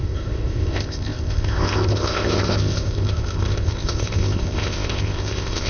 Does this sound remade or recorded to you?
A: remade